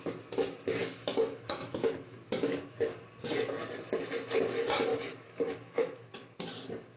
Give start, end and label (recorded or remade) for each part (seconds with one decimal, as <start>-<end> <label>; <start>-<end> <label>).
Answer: 0.0-0.8 recorded; 0.8-3.0 remade; 3.0-4.9 recorded; 4.9-6.1 remade; 6.1-7.0 recorded